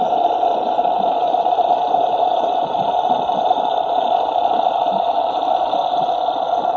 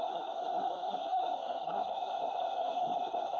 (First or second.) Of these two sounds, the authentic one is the first